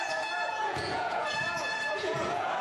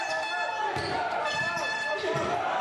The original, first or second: second